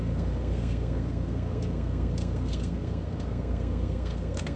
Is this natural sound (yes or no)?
no